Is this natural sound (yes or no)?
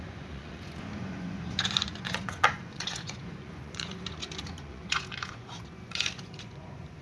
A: no